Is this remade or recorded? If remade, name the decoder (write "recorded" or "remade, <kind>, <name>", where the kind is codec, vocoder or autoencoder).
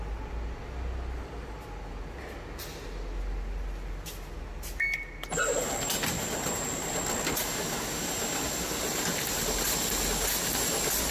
recorded